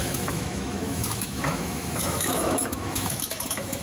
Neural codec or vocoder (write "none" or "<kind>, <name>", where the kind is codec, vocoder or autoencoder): autoencoder, DAC-VAE